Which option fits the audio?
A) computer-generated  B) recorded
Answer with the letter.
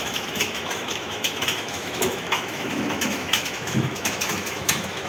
A